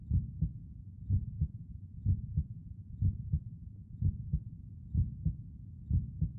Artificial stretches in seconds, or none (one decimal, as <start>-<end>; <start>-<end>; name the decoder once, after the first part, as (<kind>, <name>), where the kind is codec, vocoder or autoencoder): 0.8-4.6 (vocoder, Vocos)